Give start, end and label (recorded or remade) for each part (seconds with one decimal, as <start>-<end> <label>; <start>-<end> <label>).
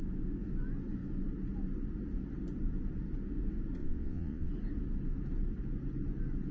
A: 0.0-3.8 recorded; 3.8-4.5 remade; 4.5-6.5 recorded